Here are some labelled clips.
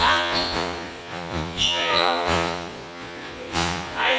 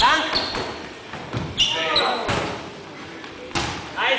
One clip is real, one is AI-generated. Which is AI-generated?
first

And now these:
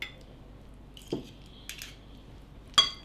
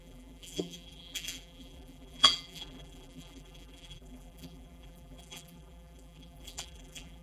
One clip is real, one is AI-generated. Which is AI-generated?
second